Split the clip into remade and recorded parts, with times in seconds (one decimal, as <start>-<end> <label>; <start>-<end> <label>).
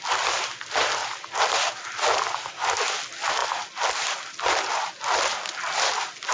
0.0-6.3 recorded